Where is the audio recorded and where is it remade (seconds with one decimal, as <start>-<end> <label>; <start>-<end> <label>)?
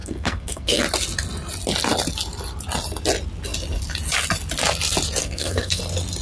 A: 0.0-0.8 remade; 0.8-5.2 recorded; 5.2-5.8 remade; 5.8-6.2 recorded